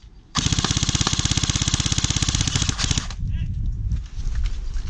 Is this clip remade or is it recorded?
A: recorded